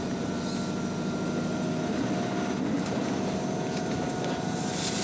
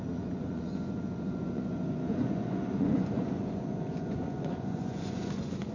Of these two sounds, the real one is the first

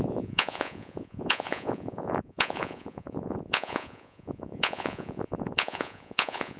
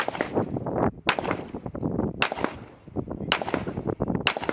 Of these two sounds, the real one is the second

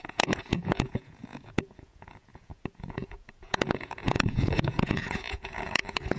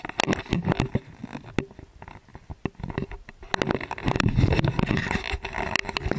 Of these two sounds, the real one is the second